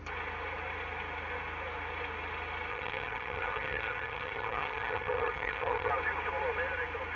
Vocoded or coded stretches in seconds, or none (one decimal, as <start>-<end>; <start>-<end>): 2.7-5.9